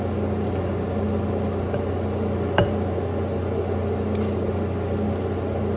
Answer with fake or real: real